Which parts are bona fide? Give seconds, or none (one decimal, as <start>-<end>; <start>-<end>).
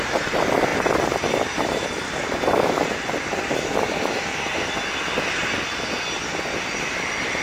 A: 0.0-7.4